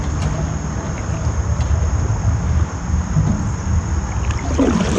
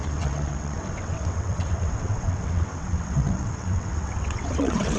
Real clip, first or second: first